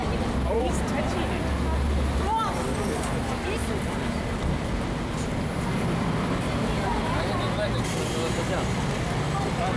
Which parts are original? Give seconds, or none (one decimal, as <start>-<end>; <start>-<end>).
0.0-9.8